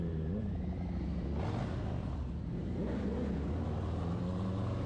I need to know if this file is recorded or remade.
recorded